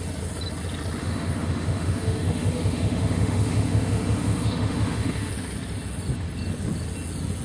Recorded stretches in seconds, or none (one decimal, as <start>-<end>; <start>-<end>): 0.0-1.0; 5.3-7.4